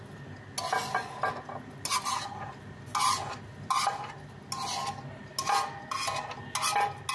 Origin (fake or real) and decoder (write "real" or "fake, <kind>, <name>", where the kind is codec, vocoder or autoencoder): real